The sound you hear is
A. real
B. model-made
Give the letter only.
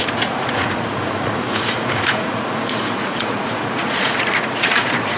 B